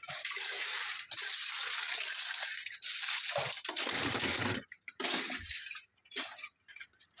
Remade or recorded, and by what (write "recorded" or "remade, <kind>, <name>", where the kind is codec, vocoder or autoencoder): remade, vocoder, BigVGAN v2